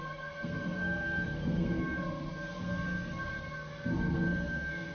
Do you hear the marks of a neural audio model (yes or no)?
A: yes